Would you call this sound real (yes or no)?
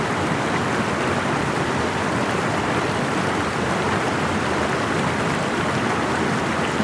yes